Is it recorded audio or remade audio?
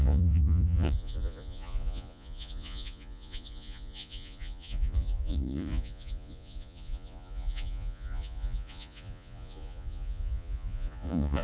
remade